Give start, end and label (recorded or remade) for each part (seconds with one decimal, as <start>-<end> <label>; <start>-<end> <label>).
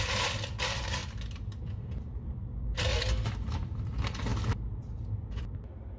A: 0.0-2.9 remade; 2.9-3.4 recorded; 3.4-4.3 remade; 4.3-5.3 recorded; 5.3-6.0 remade